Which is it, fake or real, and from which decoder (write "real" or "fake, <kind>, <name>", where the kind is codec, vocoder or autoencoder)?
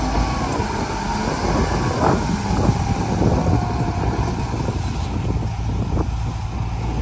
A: real